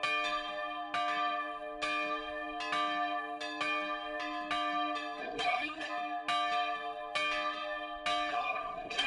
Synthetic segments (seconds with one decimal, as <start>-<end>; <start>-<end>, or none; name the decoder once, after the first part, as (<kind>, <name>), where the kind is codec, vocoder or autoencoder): 5.2-5.9 (codec, SNAC); 8.3-9.1